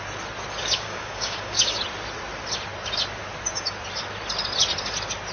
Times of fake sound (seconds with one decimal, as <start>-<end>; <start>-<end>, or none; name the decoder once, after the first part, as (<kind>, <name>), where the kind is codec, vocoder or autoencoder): 0.6-1.8 (codec, DAC)